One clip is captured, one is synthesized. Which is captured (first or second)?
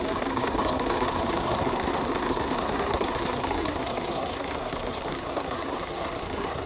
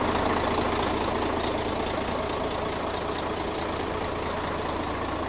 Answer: second